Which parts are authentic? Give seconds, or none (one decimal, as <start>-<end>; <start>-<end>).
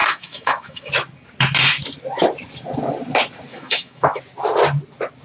0.9-3.5; 4.2-5.2